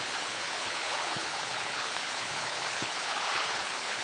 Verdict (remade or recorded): remade